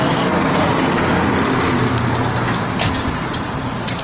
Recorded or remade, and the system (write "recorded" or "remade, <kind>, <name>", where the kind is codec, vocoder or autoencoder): recorded